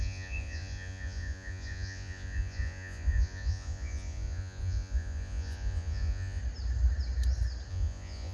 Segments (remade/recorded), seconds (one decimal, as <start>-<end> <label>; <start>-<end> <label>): 0.0-6.4 remade; 6.4-7.7 recorded; 7.7-8.3 remade